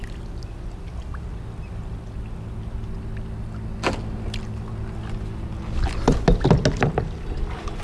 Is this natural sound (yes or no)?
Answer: yes